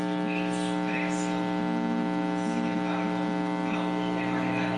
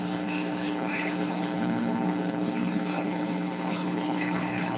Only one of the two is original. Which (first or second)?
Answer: first